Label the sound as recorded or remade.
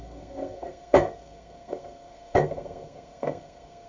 remade